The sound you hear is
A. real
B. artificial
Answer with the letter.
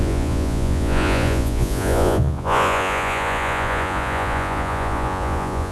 B